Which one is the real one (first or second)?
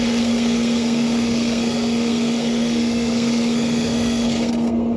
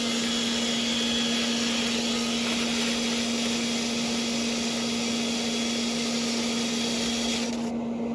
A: second